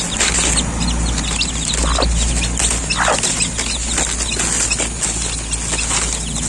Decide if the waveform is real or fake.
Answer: real